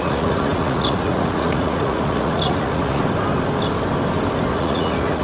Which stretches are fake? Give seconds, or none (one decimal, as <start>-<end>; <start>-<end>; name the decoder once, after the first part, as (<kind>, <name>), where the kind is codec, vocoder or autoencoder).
0.0-3.0 (vocoder, Vocos); 4.5-5.2